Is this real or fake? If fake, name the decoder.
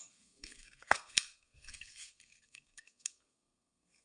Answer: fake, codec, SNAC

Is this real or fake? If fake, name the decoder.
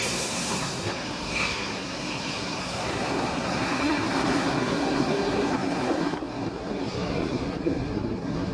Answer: fake, codec, SNAC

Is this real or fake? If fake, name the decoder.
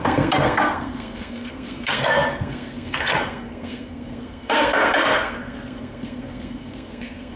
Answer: fake, codec, SNAC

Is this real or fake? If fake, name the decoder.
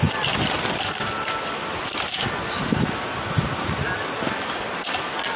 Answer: real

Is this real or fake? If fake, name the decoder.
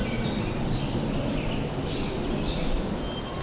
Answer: real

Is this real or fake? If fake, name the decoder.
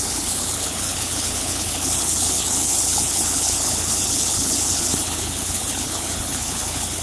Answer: fake, codec, HILCodec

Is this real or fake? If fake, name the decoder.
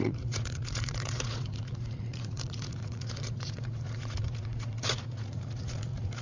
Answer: fake, vocoder, Vocos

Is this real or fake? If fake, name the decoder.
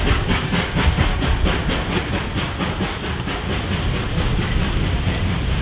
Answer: real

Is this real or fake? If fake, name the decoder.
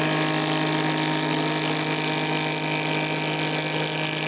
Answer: real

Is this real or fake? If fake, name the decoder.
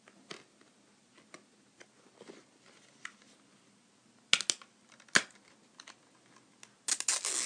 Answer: real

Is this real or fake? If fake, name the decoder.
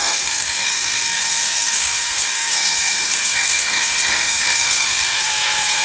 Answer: fake, codec, SNAC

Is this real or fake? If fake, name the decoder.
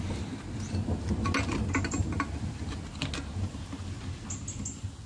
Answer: real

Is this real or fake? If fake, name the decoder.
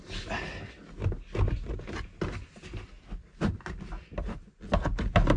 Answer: real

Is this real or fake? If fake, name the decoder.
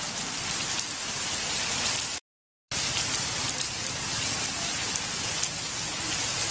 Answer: real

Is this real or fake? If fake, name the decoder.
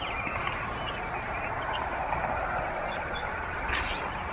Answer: real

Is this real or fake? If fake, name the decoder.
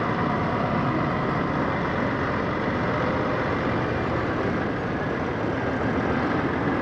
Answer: real